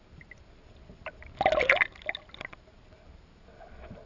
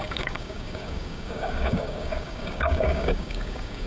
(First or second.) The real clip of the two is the first